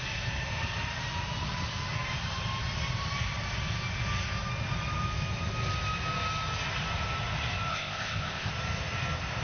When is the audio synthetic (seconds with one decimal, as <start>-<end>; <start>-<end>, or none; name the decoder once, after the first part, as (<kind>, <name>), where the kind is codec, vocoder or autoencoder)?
7.7-8.5 (codec, ZipCodec)